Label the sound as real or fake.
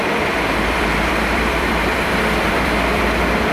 fake